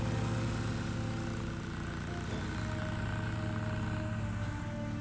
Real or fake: real